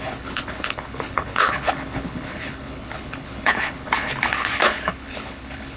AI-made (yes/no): yes